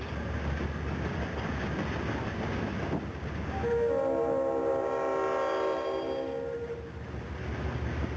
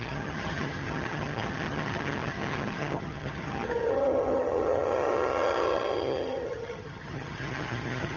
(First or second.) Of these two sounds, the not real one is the second